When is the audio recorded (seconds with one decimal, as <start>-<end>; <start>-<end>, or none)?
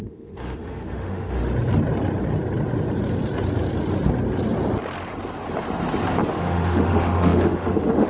1.4-6.3